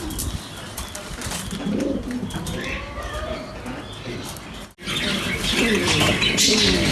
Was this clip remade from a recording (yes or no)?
no